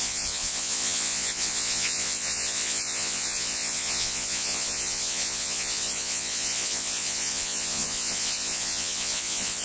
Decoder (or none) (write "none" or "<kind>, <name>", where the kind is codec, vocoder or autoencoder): vocoder, Vocos